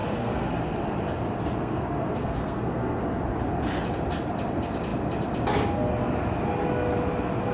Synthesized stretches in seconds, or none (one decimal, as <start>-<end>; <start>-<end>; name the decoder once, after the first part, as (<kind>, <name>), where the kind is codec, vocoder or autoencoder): 0.0-0.5 (codec, SNAC); 1.6-3.0